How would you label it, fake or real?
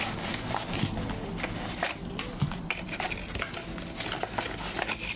real